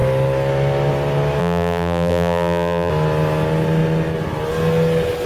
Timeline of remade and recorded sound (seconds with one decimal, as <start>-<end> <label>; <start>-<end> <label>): 0.0-1.4 recorded; 1.4-2.9 remade; 2.9-5.3 recorded